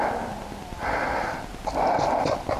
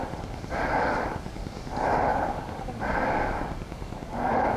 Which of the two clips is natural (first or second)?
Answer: first